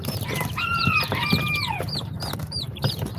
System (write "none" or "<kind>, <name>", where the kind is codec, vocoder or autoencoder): vocoder, BigVGAN v2